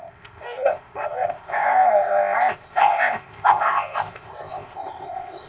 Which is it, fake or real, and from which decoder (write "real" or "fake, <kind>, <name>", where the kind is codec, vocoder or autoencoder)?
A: fake, codec, ZipCodec